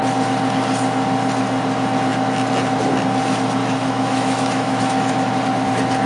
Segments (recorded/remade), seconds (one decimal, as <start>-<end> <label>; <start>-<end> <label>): 0.0-3.6 recorded; 3.6-5.3 remade; 5.3-6.1 recorded